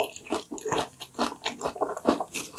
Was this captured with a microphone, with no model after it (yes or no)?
yes